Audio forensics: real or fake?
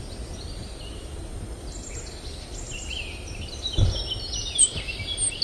real